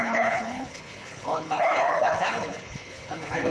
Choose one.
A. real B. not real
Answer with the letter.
B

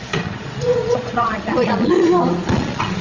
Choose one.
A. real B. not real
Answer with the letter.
B